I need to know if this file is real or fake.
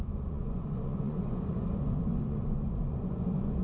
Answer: fake